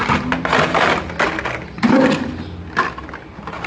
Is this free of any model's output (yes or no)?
yes